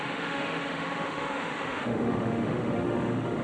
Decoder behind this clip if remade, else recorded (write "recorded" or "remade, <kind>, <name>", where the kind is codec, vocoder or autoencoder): remade, autoencoder, DAC-VAE